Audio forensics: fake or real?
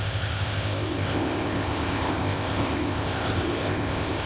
fake